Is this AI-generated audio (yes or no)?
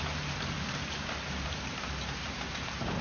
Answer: yes